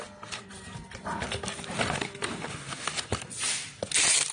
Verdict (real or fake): real